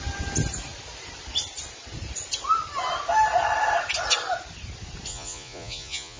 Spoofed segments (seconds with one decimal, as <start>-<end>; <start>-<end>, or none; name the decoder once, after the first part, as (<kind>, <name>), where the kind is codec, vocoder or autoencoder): 5.1-6.2 (vocoder, Vocos)